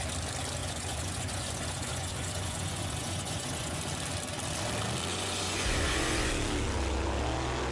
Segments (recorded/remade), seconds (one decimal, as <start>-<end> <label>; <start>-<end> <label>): 0.0-0.6 recorded; 0.6-3.8 remade; 3.8-5.1 recorded; 5.1-6.3 remade; 6.3-7.7 recorded